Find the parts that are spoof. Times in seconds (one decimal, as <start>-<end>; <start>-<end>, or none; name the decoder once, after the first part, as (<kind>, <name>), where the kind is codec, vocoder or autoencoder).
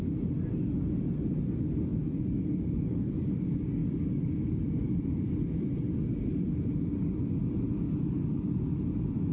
none